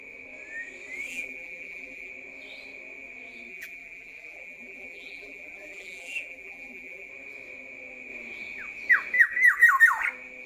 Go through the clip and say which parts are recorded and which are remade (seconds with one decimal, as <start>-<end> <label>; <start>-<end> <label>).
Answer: 0.0-1.1 recorded; 1.1-2.1 remade; 2.1-3.5 recorded; 3.5-7.1 remade; 7.1-10.5 recorded

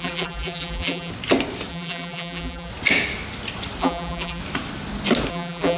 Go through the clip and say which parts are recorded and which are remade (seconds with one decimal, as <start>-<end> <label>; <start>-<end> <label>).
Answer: 0.0-1.1 remade; 1.1-1.7 recorded; 1.7-2.7 remade; 2.7-3.8 recorded; 3.8-4.4 remade; 4.4-5.3 recorded; 5.3-5.8 remade